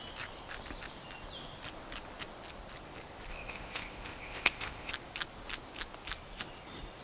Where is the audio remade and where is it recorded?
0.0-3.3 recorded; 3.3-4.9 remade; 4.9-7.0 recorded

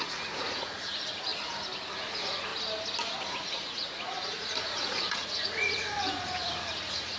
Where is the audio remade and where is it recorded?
0.0-1.3 remade; 1.3-1.9 recorded; 1.9-2.5 remade; 2.5-3.3 recorded; 3.3-7.2 remade

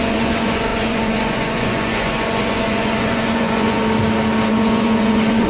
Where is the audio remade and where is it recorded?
0.0-3.8 remade; 3.8-4.5 recorded; 4.5-5.5 remade

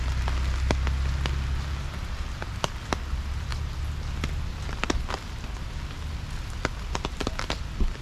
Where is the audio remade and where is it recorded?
0.0-8.0 recorded